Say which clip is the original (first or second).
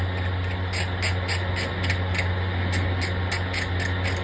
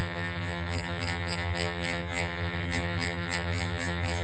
first